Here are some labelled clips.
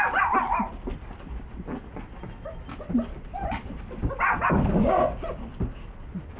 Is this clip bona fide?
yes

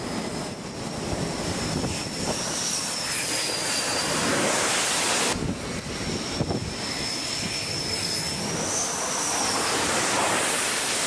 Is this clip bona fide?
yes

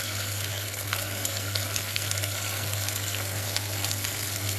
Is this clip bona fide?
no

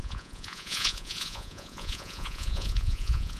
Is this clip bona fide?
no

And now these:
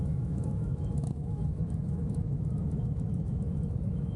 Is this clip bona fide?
no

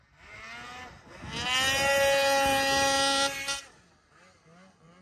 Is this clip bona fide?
yes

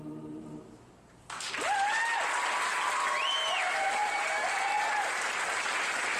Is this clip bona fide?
yes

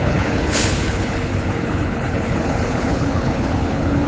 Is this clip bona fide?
no